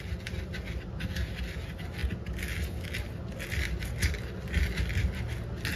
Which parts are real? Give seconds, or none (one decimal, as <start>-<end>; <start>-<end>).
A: 0.0-5.8